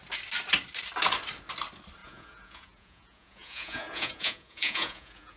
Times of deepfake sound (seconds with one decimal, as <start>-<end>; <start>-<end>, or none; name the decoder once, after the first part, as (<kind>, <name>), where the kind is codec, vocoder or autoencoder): 2.0-5.4 (vocoder, Vocos)